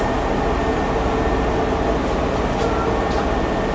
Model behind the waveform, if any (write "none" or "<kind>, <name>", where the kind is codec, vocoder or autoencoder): none